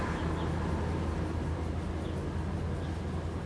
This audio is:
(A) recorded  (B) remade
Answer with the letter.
A